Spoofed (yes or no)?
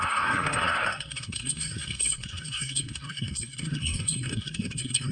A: yes